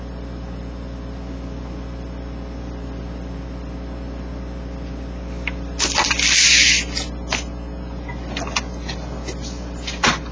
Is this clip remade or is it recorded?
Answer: recorded